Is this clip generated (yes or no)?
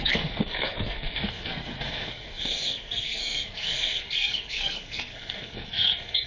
yes